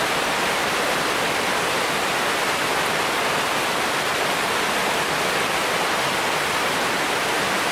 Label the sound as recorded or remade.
recorded